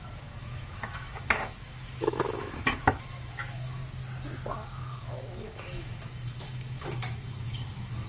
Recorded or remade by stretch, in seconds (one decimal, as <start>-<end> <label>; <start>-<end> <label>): 0.0-3.8 remade; 3.8-4.6 recorded; 4.6-8.1 remade